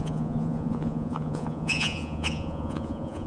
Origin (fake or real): fake